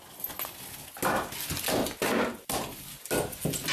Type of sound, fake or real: real